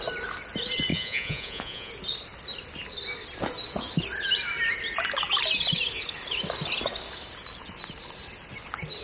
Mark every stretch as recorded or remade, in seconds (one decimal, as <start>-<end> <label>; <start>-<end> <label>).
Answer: 0.0-0.9 recorded; 0.9-1.9 remade; 1.9-9.0 recorded